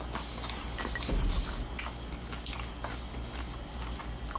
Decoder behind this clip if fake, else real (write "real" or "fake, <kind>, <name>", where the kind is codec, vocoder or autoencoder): real